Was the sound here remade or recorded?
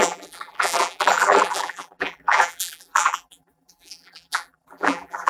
remade